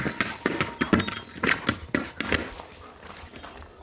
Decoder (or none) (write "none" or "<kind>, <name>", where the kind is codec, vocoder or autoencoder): none